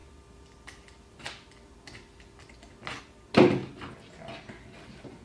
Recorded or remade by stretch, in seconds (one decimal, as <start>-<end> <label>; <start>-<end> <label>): 0.0-5.2 recorded